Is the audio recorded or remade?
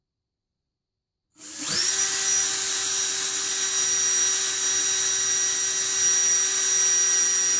recorded